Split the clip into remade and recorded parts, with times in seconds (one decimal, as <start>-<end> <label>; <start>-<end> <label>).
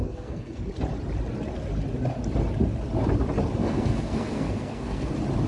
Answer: 0.0-0.7 remade; 0.7-3.6 recorded; 3.6-5.1 remade; 5.1-5.5 recorded